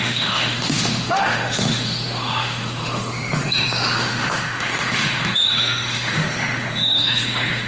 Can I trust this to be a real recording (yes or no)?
no